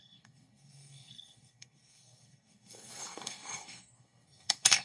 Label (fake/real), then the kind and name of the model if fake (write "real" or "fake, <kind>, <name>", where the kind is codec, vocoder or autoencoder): fake, codec, SNAC